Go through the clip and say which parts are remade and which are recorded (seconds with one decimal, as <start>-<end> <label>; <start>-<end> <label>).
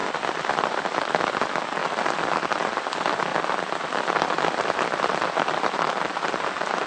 0.0-0.7 remade; 0.7-1.8 recorded; 1.8-2.3 remade; 2.3-3.3 recorded; 3.3-5.7 remade; 5.7-6.9 recorded